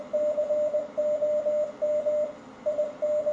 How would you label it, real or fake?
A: real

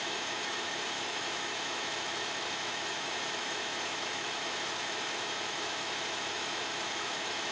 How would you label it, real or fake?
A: fake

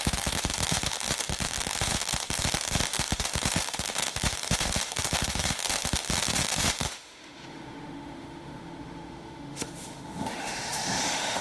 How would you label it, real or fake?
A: fake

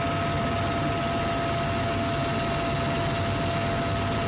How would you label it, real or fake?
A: real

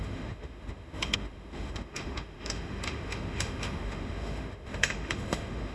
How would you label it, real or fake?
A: fake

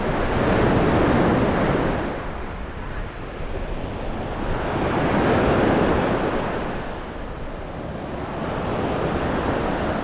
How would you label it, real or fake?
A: real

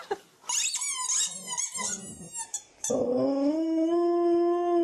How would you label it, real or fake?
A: real